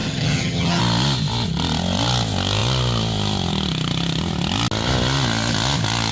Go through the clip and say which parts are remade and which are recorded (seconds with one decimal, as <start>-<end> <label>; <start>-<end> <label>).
0.0-0.8 remade; 0.8-6.1 recorded